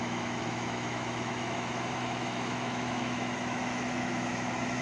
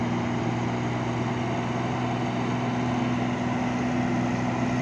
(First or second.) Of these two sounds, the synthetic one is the first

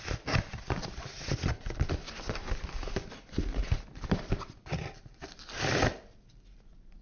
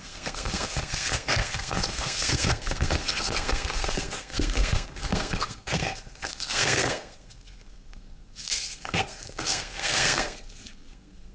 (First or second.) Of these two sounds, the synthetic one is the second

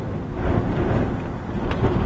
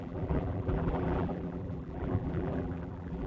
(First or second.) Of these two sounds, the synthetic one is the second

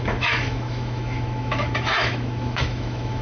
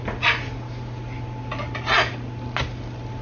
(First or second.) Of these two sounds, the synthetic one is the first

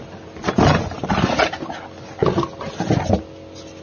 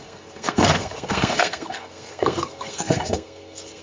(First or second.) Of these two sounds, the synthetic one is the second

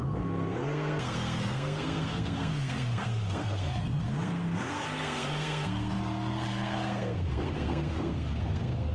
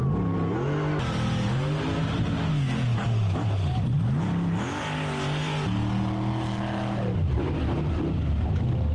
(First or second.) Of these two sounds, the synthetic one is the first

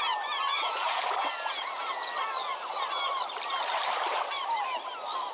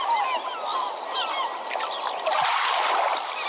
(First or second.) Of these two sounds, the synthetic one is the first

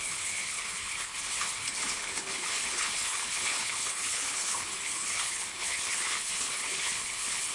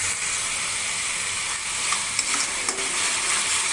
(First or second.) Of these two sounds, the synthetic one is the first